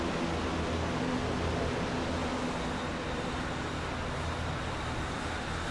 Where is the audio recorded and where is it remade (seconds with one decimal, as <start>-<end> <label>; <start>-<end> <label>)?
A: 0.0-5.7 recorded